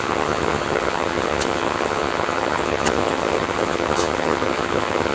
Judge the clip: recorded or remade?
remade